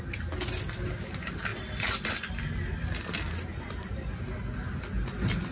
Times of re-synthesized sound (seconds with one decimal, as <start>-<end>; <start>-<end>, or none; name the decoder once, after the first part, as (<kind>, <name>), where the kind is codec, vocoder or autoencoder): none